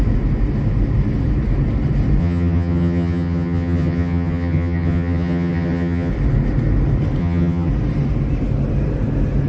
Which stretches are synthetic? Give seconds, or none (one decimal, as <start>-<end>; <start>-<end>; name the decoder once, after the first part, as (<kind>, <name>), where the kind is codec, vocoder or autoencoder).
2.2-6.1 (vocoder, HiFi-GAN); 7.2-7.7